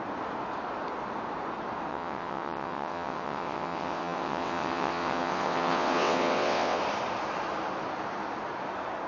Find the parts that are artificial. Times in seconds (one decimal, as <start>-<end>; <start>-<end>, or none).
1.9-6.8